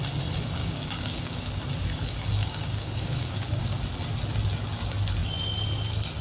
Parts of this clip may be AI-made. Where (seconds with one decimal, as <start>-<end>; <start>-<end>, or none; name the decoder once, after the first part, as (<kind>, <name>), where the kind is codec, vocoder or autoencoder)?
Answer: 0.6-1.6 (codec, DAC); 2.4-3.7